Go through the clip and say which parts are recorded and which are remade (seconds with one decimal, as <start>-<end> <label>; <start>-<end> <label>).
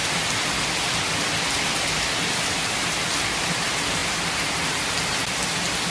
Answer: 0.0-5.9 recorded